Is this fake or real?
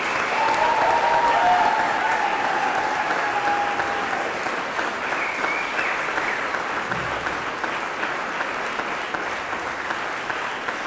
real